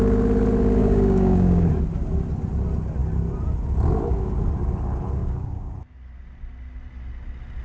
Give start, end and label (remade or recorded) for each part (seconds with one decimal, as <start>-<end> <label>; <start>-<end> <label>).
0.0-0.8 recorded; 0.8-1.7 remade; 1.7-5.2 recorded; 5.2-5.7 remade; 5.7-7.6 recorded